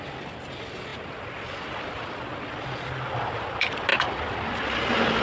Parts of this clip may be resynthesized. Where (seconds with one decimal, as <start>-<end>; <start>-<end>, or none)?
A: none